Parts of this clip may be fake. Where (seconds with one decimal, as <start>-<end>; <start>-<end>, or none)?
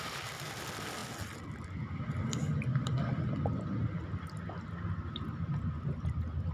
none